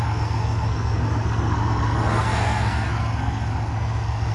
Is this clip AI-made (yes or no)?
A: yes